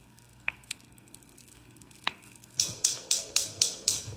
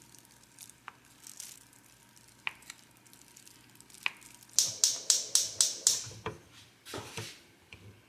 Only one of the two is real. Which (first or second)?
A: second